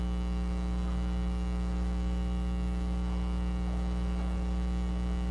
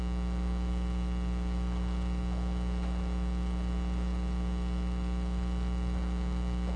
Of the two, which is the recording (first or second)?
second